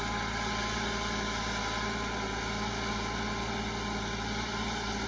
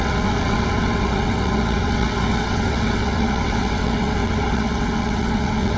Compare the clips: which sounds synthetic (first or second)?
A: second